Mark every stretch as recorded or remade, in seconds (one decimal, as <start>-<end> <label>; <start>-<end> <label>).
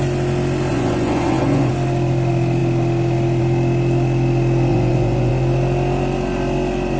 0.0-0.7 recorded; 0.7-1.7 remade; 1.7-4.7 recorded; 4.7-5.3 remade; 5.3-7.0 recorded